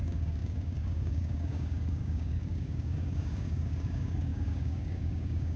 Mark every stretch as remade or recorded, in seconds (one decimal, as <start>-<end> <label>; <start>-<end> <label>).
0.0-5.6 remade